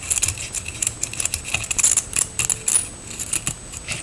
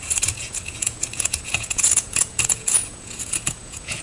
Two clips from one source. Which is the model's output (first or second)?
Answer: second